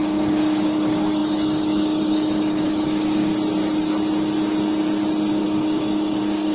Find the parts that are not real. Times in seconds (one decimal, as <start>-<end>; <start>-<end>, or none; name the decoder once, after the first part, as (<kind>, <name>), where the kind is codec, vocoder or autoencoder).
0.0-3.3 (codec, DAC); 5.3-6.5